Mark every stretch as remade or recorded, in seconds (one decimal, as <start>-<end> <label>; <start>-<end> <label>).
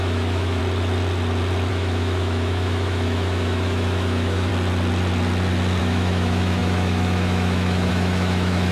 0.0-0.6 remade; 0.6-1.7 recorded; 1.7-4.5 remade; 4.5-5.8 recorded; 5.8-8.7 remade